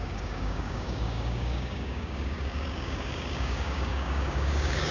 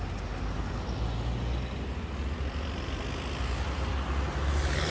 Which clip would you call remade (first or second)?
first